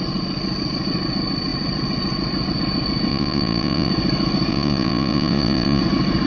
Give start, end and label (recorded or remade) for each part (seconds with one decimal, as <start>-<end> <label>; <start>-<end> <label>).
0.0-3.1 recorded; 3.1-3.9 remade; 3.9-4.5 recorded; 4.5-5.8 remade; 5.8-6.3 recorded